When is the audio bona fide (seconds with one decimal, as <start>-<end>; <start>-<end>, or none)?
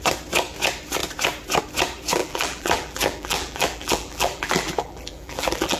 0.0-2.2